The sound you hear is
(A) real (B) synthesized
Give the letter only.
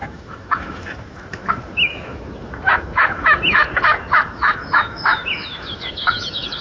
B